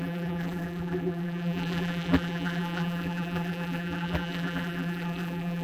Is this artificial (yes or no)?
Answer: yes